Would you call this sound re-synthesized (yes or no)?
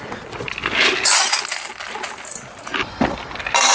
no